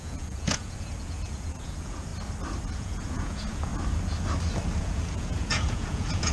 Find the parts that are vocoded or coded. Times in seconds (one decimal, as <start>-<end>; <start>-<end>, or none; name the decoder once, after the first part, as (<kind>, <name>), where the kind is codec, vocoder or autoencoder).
0.0-2.1 (vocoder, Vocos); 2.7-3.7; 4.8-6.3